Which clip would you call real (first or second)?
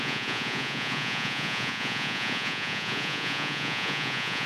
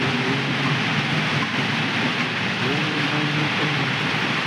second